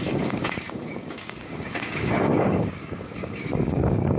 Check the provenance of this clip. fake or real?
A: fake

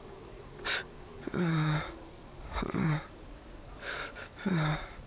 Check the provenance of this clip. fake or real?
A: fake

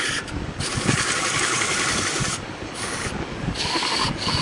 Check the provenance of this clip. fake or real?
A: fake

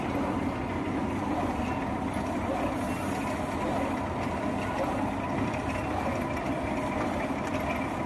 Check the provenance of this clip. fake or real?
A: real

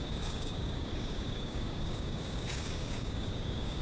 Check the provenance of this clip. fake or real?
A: fake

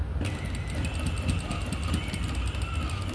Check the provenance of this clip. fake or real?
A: real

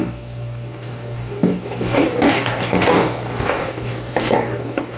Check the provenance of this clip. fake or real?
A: fake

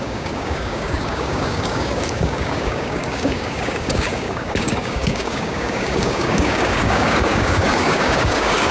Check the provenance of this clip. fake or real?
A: fake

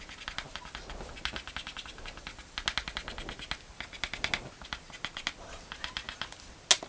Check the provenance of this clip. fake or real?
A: real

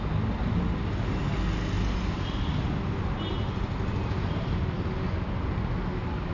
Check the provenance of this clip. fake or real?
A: real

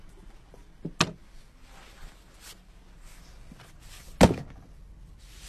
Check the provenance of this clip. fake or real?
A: real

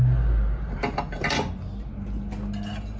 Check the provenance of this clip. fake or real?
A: real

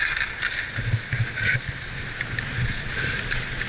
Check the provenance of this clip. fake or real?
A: real